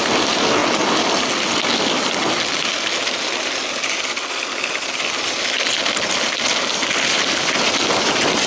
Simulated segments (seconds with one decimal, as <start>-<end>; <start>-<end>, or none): none